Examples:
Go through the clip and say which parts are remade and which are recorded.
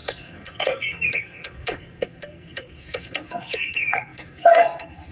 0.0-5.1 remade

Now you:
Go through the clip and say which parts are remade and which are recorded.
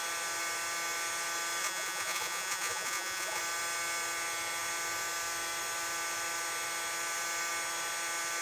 0.0-1.6 recorded; 1.6-3.4 remade; 3.4-8.4 recorded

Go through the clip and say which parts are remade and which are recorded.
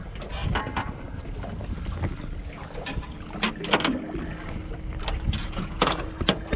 0.0-5.4 recorded; 5.4-6.0 remade; 6.0-6.6 recorded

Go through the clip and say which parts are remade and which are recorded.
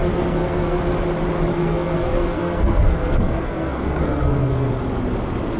0.0-0.8 remade; 0.8-1.5 recorded; 1.5-4.7 remade; 4.7-5.6 recorded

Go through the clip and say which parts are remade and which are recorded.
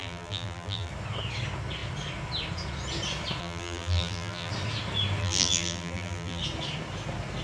0.0-0.9 remade; 0.9-3.4 recorded; 3.4-4.5 remade; 4.5-5.2 recorded; 5.2-6.4 remade; 6.4-7.4 recorded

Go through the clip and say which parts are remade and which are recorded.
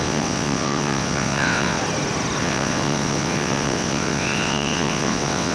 0.0-1.8 remade; 1.8-2.4 recorded; 2.4-5.5 remade